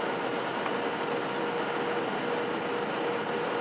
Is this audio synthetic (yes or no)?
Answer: no